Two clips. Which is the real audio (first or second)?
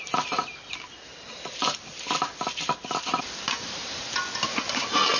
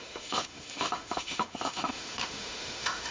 first